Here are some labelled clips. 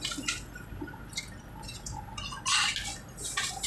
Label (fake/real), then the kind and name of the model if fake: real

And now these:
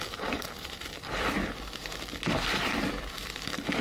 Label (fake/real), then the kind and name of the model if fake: fake, vocoder, BigVGAN v2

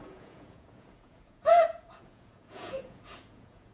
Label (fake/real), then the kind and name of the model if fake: fake, vocoder, Vocos